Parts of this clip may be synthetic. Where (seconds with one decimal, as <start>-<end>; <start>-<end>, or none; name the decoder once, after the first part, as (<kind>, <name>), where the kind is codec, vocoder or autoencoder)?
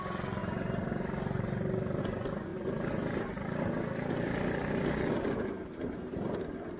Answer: none